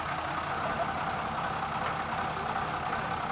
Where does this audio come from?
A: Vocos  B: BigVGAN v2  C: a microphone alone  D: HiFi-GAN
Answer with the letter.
C